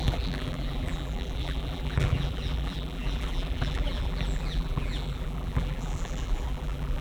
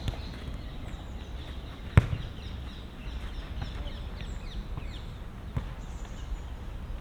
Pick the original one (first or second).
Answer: second